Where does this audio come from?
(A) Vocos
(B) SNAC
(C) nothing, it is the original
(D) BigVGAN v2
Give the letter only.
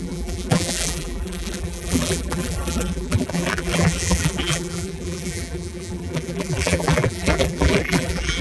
D